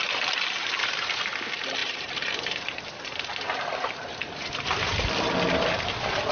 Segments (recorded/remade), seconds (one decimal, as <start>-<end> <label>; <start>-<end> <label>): 0.0-0.6 recorded; 0.6-1.3 remade; 1.3-1.8 recorded; 1.8-5.1 remade; 5.1-6.3 recorded